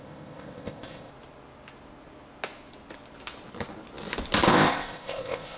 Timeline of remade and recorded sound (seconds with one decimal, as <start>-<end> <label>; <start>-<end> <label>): 0.0-1.1 remade; 1.1-4.5 recorded; 4.5-5.6 remade